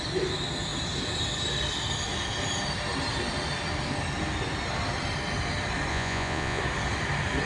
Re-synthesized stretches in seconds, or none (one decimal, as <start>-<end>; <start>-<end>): 5.9-6.6